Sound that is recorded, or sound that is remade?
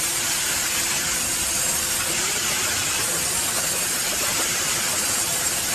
remade